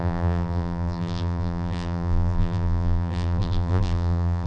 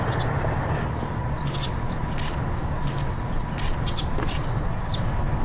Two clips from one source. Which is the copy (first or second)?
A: first